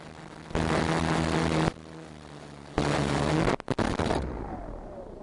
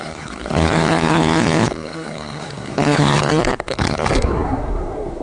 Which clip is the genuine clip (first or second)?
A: first